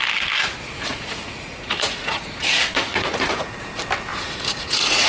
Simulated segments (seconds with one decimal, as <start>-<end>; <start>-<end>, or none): 0.5-3.5; 4.1-5.1

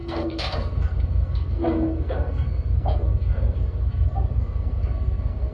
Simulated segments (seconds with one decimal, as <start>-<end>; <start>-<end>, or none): 0.0-5.5

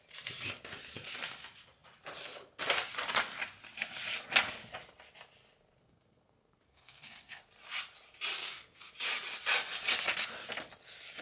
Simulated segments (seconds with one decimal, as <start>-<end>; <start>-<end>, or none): 5.8-7.4; 8.4-8.9

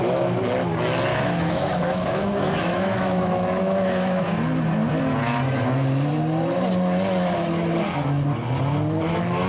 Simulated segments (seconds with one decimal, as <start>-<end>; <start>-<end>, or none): 1.1-4.2

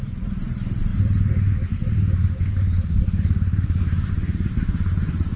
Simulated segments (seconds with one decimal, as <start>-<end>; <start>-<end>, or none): 0.0-5.4

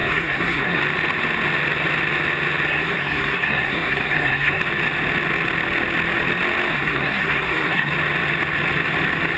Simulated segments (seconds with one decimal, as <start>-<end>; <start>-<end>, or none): 0.0-0.8; 2.7-4.6; 6.7-7.9